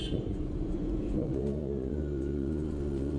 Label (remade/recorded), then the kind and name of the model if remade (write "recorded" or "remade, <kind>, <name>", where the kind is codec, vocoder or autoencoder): remade, vocoder, Vocos